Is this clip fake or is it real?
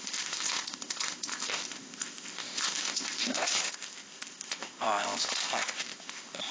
fake